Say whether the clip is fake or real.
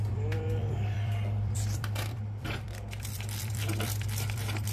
fake